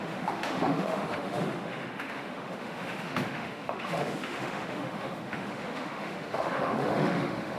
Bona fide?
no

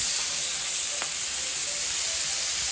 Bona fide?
yes